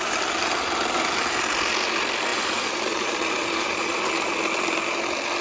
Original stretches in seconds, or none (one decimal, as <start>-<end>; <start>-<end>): 0.0-2.3; 4.1-5.4